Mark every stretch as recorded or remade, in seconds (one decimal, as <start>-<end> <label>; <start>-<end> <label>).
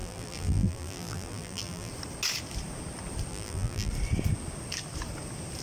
0.0-1.9 remade; 1.9-3.3 recorded; 3.3-3.9 remade; 3.9-5.6 recorded